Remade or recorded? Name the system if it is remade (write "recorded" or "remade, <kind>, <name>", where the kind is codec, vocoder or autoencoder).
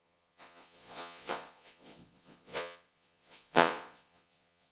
remade, vocoder, Vocos